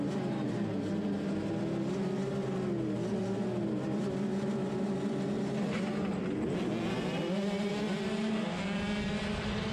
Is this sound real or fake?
real